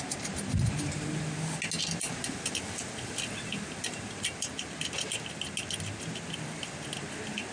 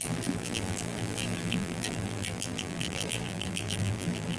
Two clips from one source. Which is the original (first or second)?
first